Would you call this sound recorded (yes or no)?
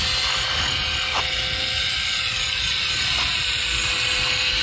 yes